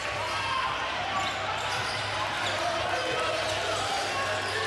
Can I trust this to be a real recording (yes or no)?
yes